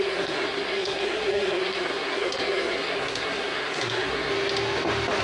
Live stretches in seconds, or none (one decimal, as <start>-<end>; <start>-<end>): 4.3-5.2

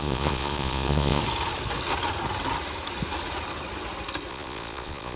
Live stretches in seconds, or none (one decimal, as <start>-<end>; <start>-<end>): 1.2-4.3

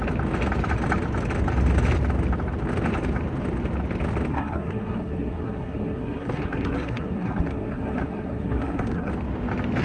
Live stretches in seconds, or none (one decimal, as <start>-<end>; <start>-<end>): 0.0-4.3; 9.1-9.8